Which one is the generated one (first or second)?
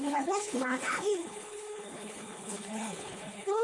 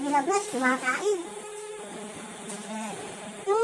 first